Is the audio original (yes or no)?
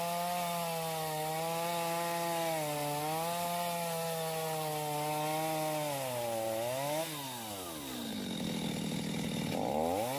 yes